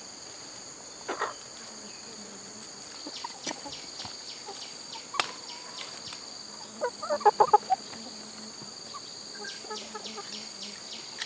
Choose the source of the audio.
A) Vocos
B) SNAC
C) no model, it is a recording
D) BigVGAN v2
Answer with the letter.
C